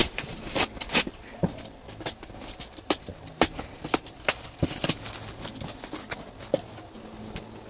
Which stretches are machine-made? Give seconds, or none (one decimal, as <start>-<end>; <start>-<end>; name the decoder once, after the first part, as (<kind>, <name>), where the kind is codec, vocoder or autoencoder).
0.0-3.6 (vocoder, BigVGAN v2)